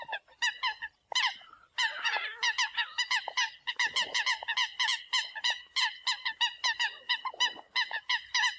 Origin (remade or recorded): recorded